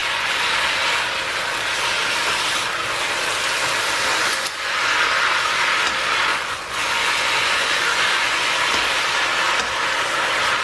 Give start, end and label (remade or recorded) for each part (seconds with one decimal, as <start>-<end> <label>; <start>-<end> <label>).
0.0-0.5 remade; 0.5-4.1 recorded; 4.1-4.9 remade; 4.9-6.3 recorded; 6.3-8.6 remade; 8.6-10.6 recorded